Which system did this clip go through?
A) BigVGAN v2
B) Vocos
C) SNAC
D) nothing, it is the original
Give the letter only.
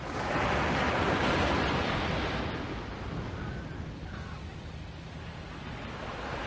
D